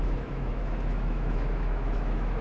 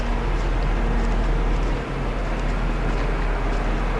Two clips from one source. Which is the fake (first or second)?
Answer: first